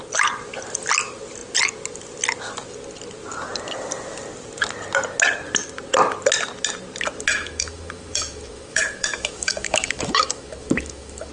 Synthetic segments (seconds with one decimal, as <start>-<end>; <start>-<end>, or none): 7.3-11.3